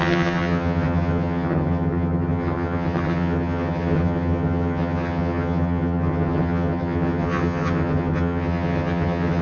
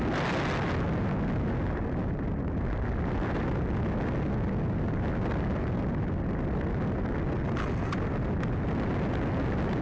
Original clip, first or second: second